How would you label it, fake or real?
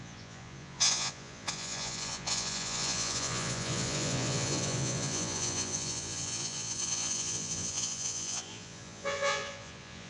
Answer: fake